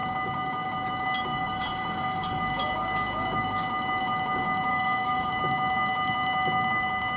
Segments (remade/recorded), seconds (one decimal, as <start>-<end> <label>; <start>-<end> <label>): 0.0-1.3 recorded; 1.3-2.4 remade; 2.4-4.7 recorded; 4.7-5.3 remade; 5.3-7.2 recorded